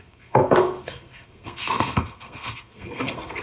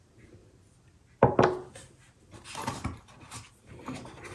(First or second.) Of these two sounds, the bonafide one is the second